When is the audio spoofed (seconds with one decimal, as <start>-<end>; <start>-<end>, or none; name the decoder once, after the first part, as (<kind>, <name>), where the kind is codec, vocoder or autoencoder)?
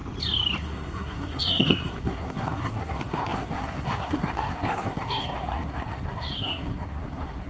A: 0.6-7.5 (codec, SNAC)